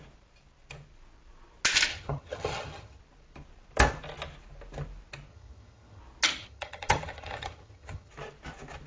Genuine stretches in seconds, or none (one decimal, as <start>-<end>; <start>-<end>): 0.0-1.9; 3.0-5.3; 6.0-6.4; 8.1-8.9